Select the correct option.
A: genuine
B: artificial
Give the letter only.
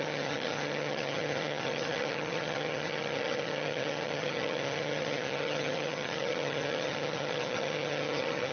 B